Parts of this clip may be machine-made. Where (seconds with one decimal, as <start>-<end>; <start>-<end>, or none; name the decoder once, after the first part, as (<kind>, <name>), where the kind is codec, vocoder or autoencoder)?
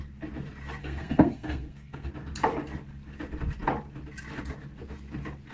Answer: 0.8-2.1 (codec, SNAC)